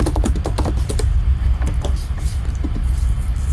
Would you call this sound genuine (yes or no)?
yes